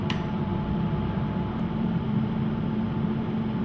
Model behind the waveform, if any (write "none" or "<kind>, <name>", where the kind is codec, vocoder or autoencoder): vocoder, BigVGAN v2